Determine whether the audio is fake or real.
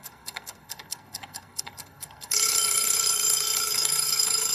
fake